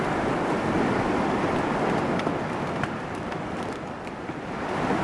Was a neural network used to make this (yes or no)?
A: yes